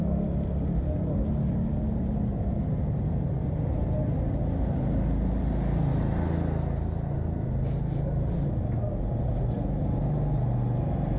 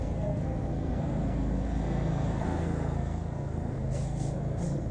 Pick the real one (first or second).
first